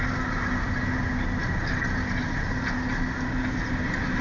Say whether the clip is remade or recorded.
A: recorded